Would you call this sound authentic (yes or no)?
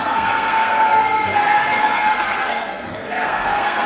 no